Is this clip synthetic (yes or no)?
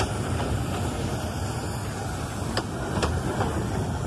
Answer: no